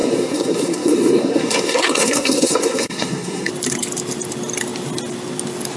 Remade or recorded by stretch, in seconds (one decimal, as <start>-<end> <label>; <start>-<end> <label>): 0.0-3.5 remade; 3.5-5.8 recorded